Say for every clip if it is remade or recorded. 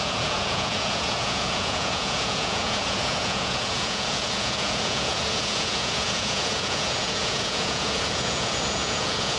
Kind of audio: remade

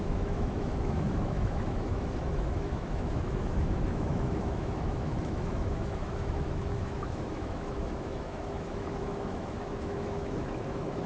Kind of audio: remade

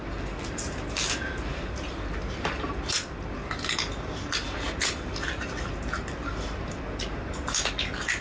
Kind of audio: recorded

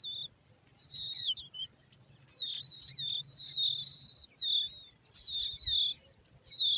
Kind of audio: recorded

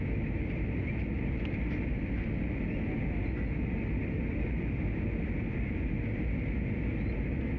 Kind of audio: recorded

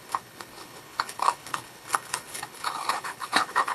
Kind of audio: remade